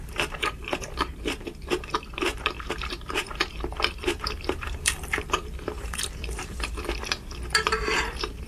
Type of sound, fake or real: fake